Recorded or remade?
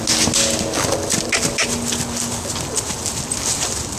recorded